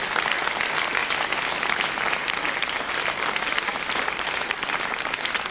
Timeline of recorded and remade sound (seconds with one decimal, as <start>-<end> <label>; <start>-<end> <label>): 0.0-1.0 remade; 1.0-2.9 recorded; 2.9-5.5 remade